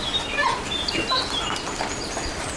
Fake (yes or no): no